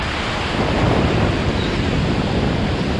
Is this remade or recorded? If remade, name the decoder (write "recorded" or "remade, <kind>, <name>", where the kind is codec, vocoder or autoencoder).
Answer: recorded